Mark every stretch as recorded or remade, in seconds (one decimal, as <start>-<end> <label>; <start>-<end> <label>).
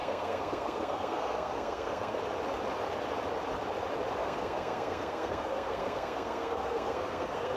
0.0-2.2 remade; 2.2-4.2 recorded; 4.2-7.6 remade